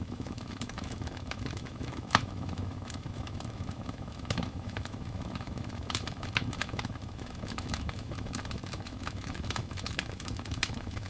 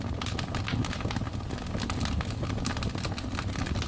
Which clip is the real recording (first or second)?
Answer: second